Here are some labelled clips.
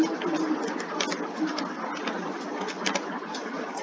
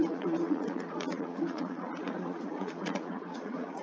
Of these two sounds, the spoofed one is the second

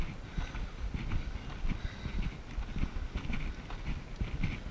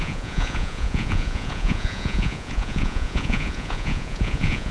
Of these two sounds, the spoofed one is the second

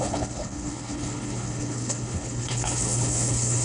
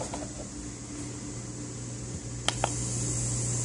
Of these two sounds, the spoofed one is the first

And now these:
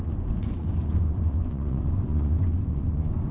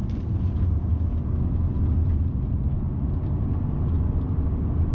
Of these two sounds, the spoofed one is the first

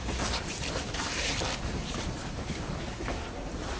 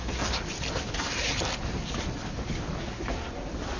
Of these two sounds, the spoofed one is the first